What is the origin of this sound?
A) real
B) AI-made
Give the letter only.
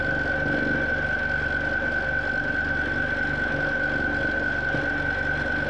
A